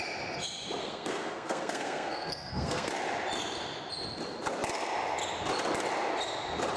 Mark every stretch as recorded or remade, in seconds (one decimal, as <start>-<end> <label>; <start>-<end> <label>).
0.0-0.8 recorded; 0.8-2.9 remade; 2.9-6.8 recorded